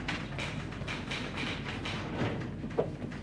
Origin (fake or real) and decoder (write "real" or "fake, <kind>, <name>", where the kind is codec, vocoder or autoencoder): real